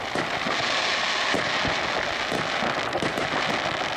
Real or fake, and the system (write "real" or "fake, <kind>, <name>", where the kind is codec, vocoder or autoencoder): real